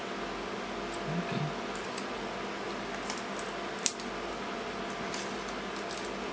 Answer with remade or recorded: recorded